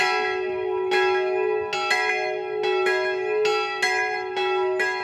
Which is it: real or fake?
real